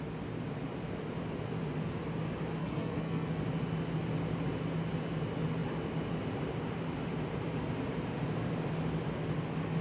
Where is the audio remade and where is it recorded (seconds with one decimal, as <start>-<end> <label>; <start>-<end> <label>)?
0.0-2.6 recorded; 2.6-3.4 remade; 3.4-9.8 recorded